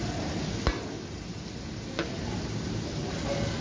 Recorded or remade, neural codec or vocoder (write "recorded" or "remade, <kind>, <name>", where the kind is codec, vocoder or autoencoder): recorded